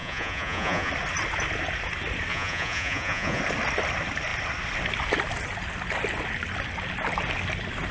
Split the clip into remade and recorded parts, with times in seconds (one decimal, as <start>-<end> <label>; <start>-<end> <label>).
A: 0.0-0.9 remade; 0.9-2.3 recorded; 2.3-3.4 remade; 3.4-7.9 recorded